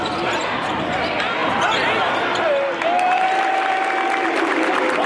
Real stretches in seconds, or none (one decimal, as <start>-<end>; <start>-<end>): 0.0-5.1